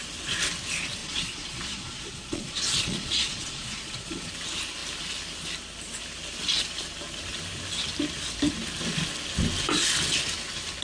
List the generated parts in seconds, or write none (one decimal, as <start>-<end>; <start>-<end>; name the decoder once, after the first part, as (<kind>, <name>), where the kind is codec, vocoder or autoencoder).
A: 1.0-4.3 (vocoder, Vocos)